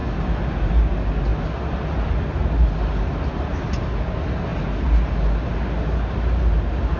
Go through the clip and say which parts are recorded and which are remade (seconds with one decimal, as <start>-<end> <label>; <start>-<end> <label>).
0.0-7.0 recorded